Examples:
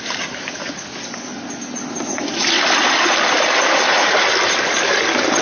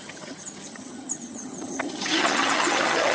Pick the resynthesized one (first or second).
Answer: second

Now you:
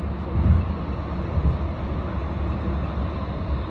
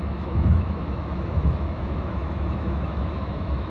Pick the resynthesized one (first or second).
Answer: second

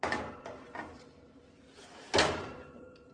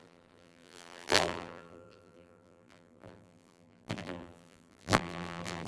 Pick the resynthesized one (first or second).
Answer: second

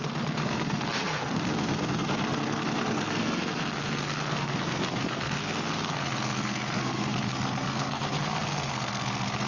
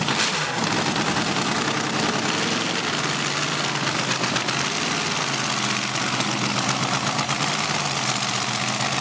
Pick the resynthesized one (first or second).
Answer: first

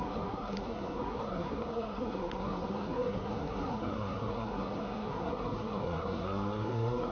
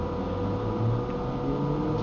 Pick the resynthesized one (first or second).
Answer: first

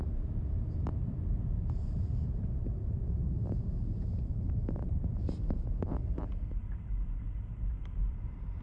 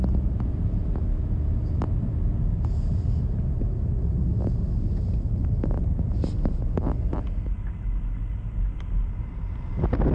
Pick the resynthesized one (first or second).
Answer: first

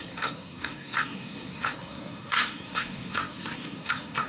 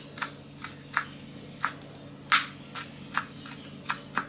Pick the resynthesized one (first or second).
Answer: first